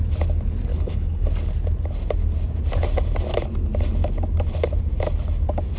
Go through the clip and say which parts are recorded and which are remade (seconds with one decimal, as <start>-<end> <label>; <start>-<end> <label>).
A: 0.0-0.7 recorded; 0.7-1.3 remade; 1.3-5.8 recorded